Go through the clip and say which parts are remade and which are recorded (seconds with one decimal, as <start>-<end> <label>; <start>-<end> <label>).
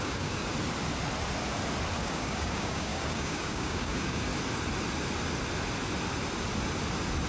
0.0-0.5 remade; 0.5-2.0 recorded; 2.0-4.3 remade; 4.3-7.3 recorded